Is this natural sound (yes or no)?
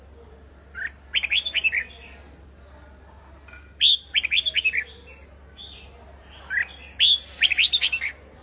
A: yes